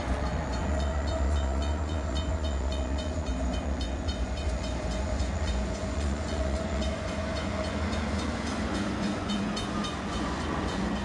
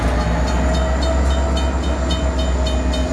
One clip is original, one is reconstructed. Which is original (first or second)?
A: second